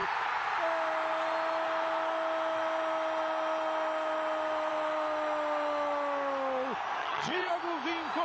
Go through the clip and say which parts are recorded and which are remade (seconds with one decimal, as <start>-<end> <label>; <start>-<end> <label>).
0.0-7.0 recorded; 7.0-7.5 remade; 7.5-8.2 recorded